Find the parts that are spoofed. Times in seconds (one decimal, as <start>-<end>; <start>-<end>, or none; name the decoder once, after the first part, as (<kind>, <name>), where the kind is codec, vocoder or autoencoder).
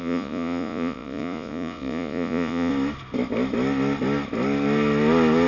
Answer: 0.0-2.7 (vocoder, Vocos)